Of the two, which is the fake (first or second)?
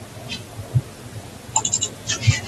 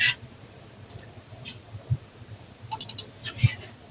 second